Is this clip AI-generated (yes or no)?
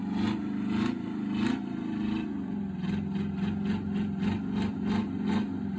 no